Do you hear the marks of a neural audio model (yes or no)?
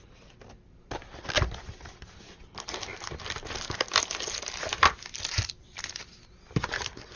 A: no